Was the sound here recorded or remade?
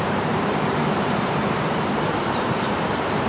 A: remade